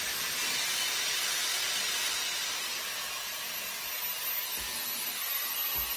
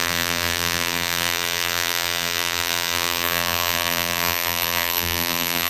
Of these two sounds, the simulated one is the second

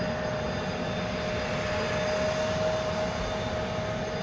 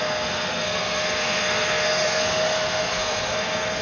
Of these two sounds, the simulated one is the second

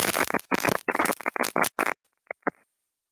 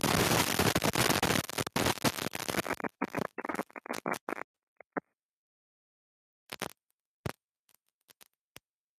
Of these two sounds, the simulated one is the first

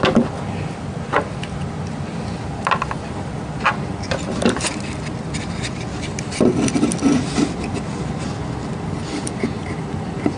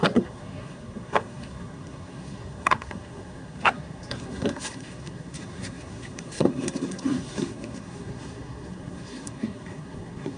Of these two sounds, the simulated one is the second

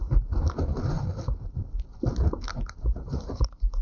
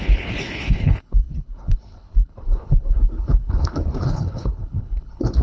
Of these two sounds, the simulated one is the second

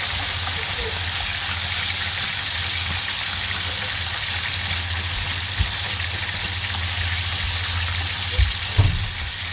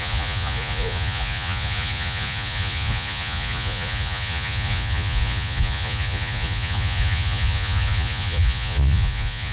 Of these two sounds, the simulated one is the second